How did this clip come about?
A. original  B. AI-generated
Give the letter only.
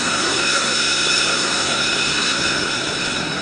B